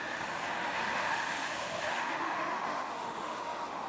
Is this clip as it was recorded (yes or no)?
no